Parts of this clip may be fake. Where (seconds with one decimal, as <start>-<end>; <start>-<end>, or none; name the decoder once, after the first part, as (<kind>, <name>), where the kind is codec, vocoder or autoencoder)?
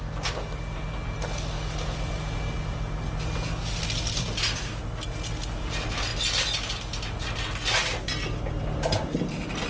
none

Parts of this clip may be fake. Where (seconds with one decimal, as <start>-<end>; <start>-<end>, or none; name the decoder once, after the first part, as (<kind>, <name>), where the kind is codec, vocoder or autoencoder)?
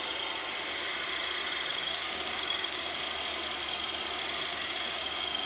1.7-3.0 (codec, DAC); 4.5-5.5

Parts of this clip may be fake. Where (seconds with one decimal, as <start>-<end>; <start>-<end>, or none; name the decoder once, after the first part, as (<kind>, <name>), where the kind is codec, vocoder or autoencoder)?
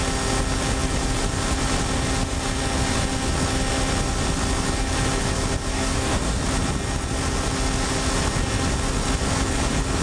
5.7-6.4 (codec, DAC)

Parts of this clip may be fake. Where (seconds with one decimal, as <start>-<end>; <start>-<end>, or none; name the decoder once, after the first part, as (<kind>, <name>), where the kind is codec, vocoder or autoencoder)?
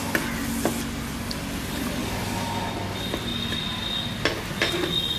2.0-2.7 (codec, DAC)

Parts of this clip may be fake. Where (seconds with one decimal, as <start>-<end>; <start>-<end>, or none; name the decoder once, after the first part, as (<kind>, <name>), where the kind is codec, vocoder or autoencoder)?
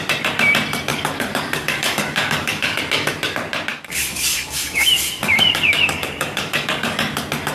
0.9-2.8 (codec, DAC); 3.7-7.1